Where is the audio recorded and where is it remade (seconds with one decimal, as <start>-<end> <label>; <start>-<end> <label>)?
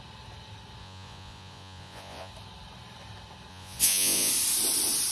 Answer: 0.0-0.8 recorded; 0.8-2.3 remade; 2.3-3.5 recorded; 3.5-4.3 remade; 4.3-5.1 recorded